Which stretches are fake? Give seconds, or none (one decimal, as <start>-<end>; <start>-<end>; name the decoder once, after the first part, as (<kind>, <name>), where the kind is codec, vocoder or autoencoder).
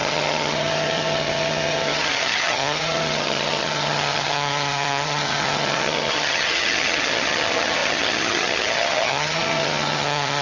0.0-10.4 (vocoder, HiFi-GAN)